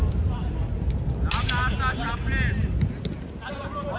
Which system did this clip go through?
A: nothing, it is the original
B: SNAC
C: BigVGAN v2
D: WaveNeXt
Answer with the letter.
A